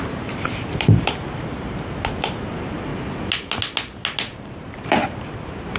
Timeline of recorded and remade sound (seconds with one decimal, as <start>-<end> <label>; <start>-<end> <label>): 0.0-2.9 remade; 2.9-4.4 recorded; 4.4-5.8 remade